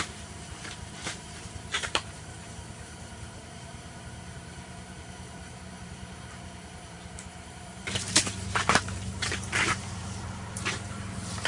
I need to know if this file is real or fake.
fake